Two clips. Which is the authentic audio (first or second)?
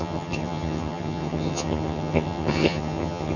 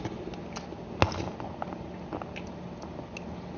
second